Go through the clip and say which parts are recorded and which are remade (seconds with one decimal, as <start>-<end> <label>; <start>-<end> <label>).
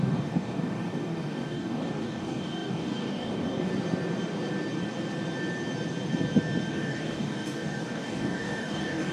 0.0-3.7 remade; 3.7-6.7 recorded; 6.7-9.1 remade